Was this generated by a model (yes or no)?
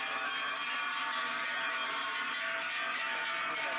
no